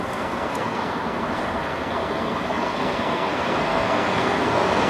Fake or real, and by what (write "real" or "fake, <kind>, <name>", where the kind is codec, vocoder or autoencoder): fake, codec, SNAC